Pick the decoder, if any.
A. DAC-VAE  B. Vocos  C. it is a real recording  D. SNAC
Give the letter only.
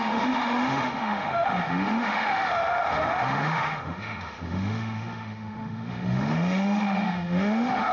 A